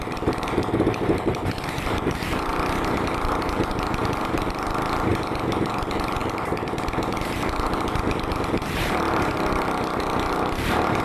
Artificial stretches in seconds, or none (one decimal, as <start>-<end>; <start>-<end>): 0.0-5.1; 5.7-11.0